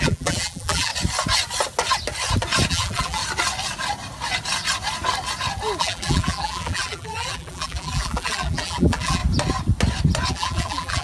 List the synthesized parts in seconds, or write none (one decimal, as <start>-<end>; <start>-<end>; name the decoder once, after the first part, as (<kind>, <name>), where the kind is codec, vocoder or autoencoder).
0.0-0.9 (vocoder, BigVGAN v2); 2.7-3.2; 5.8-9.2; 10.3-11.0